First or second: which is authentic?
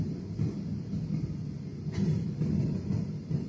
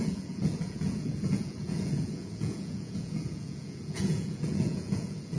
first